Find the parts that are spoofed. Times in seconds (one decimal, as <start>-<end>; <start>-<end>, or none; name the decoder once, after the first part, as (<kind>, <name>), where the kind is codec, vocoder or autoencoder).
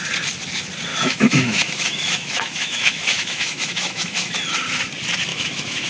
0.9-4.4 (autoencoder, DAC-VAE); 5.3-5.9